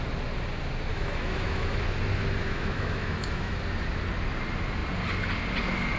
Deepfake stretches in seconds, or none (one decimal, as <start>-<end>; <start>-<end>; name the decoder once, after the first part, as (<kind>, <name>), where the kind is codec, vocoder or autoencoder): 0.9-1.8 (autoencoder, DAC-VAE); 2.4-3.6